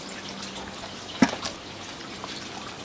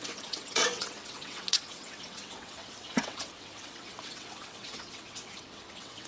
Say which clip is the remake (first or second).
second